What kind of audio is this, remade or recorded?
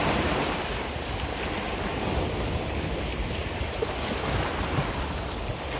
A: recorded